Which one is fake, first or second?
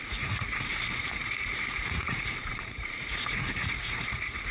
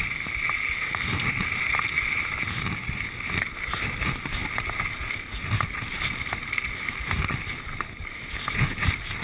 first